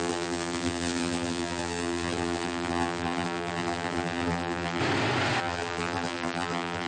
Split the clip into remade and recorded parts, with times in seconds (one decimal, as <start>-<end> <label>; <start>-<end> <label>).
0.0-4.8 remade; 4.8-5.4 recorded; 5.4-6.9 remade